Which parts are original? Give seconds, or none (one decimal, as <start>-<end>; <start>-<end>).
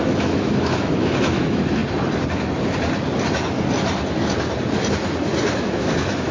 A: 1.8-5.6